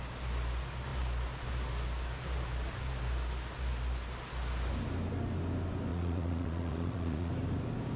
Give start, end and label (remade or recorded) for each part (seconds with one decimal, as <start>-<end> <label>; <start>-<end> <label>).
0.0-5.9 recorded; 5.9-7.3 remade; 7.3-8.0 recorded